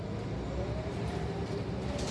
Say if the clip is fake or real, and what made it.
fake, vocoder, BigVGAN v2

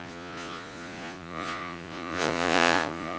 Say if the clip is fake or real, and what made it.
fake, vocoder, Vocos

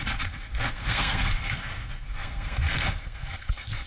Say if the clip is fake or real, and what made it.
fake, codec, SNAC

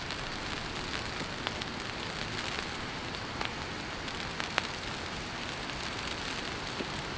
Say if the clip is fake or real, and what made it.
real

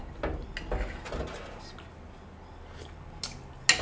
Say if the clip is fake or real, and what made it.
real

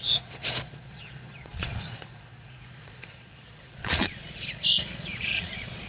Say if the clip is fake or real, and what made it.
fake, vocoder, Vocos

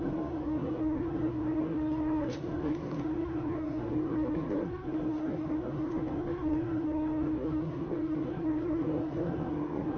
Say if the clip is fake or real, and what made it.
fake, codec, SNAC